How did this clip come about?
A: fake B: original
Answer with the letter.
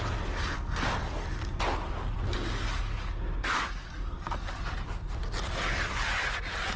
B